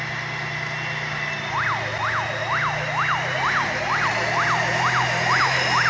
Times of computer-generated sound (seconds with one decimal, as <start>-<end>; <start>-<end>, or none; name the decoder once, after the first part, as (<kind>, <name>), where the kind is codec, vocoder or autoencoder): none